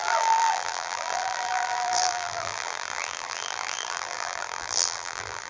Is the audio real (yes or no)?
no